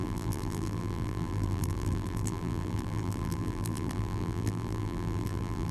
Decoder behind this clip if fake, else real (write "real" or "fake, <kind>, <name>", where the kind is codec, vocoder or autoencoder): fake, vocoder, BigVGAN v2